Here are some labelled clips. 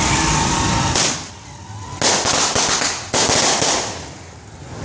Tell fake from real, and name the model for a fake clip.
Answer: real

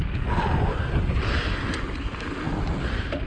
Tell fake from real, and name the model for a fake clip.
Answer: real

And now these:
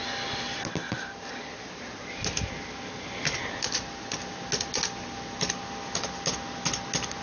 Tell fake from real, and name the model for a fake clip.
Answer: real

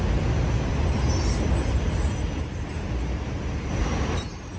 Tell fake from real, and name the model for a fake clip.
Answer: real